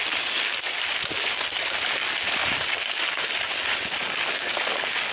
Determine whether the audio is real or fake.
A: real